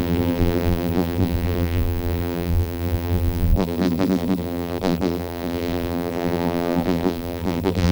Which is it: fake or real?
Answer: fake